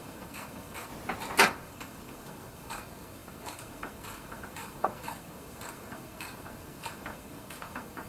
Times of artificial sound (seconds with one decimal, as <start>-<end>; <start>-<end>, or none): 0.0-0.9; 1.4-8.1